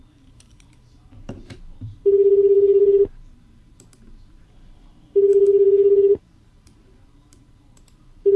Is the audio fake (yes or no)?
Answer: yes